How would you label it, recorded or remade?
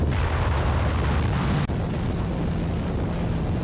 recorded